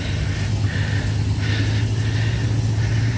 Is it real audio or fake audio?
real